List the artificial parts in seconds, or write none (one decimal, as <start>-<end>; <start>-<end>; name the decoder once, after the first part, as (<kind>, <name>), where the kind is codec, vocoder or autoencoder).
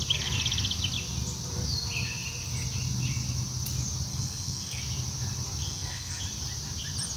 4.1-4.8 (codec, SNAC); 5.6-6.2